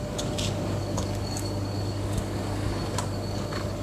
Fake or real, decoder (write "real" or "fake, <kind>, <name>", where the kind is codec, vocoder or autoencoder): fake, codec, DAC